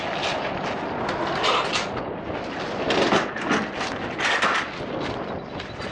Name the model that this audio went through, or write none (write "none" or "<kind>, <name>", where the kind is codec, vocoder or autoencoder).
none